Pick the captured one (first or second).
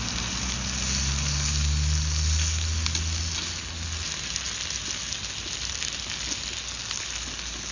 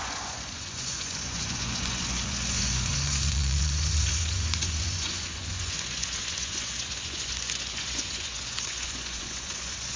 first